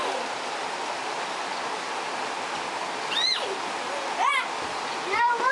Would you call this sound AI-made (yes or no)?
no